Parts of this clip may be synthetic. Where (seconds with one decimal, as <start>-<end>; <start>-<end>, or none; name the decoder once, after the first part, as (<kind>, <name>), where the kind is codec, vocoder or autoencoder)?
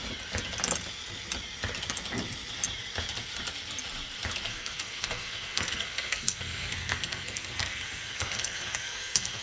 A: 4.5-9.4 (codec, SNAC)